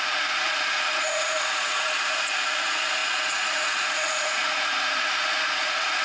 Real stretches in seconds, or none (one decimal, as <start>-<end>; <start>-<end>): none

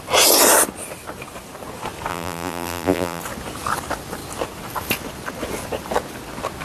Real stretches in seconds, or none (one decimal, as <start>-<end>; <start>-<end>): 0.0-2.1; 3.2-6.6

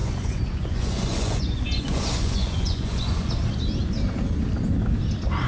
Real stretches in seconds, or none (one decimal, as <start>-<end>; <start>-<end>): 3.3-5.5

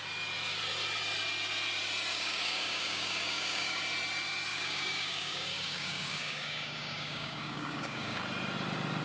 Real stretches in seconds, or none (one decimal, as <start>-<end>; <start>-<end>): 0.0-2.1; 3.8-4.5; 8.2-9.0